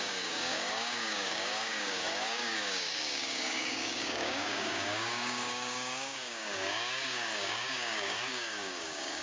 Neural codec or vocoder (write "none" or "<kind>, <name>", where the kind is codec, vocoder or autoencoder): codec, DAC